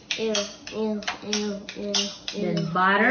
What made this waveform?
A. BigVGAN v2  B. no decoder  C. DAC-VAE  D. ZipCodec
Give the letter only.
B